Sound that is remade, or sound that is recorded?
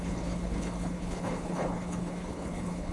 remade